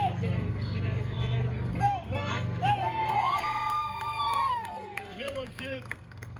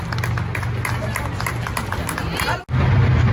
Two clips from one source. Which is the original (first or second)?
second